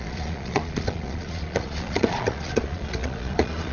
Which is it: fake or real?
fake